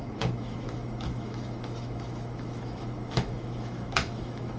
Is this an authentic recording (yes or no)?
no